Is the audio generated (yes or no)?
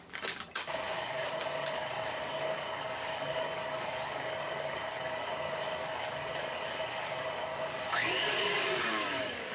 yes